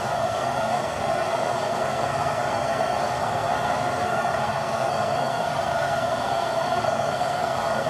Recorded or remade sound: remade